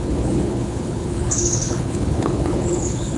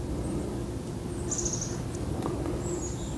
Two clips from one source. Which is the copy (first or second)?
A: first